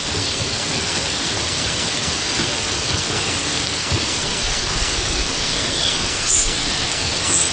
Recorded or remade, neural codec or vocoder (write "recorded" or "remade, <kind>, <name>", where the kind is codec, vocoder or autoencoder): remade, codec, SNAC